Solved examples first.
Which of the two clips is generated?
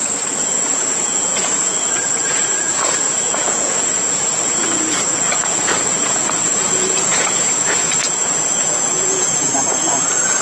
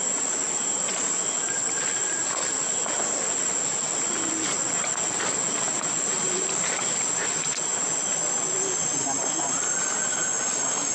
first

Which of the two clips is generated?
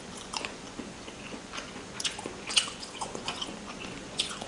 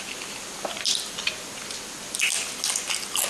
first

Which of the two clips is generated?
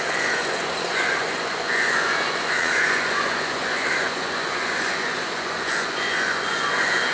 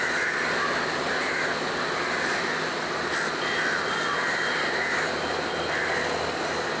first